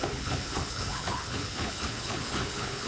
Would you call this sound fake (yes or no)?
yes